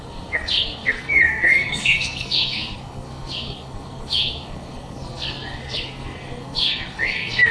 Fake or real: fake